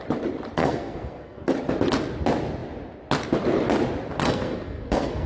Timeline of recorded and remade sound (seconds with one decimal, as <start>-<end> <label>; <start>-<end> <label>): 0.0-0.6 recorded; 0.6-1.5 remade; 1.5-4.2 recorded; 4.2-5.3 remade